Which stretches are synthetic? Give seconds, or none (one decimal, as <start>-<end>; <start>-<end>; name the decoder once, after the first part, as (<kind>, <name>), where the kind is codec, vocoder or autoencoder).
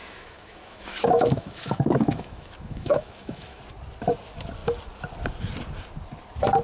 0.0-3.6 (autoencoder, DAC-VAE)